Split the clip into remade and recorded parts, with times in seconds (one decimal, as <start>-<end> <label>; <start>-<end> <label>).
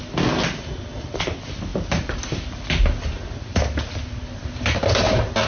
0.0-5.5 recorded